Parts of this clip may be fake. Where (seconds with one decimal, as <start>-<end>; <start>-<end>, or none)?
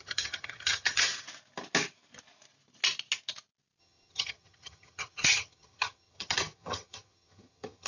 0.0-1.1; 3.8-7.9